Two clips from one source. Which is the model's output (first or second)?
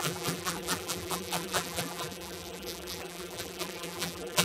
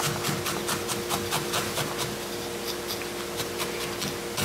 first